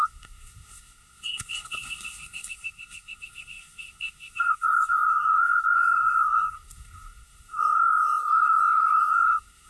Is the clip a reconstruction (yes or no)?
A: yes